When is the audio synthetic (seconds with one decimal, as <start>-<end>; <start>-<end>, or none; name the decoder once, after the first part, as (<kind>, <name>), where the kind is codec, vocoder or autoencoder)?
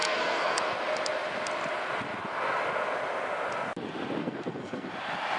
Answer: 0.0-0.6 (codec, SNAC); 4.2-4.9